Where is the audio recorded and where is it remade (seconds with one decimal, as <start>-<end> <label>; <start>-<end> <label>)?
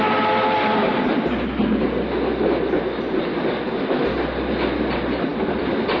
0.0-6.0 recorded